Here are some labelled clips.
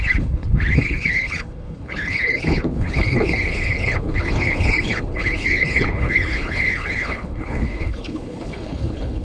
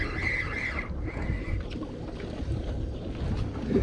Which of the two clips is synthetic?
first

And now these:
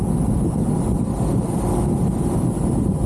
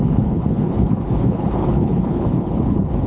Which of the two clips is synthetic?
second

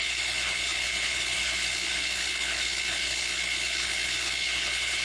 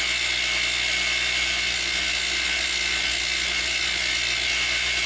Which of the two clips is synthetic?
first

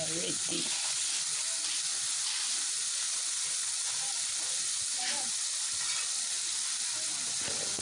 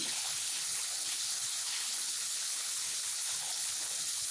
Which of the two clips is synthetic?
second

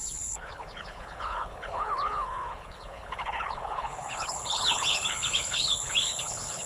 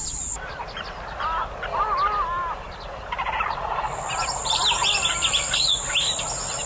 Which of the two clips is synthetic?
first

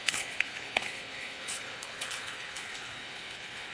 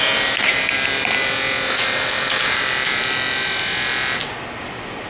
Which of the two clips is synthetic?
first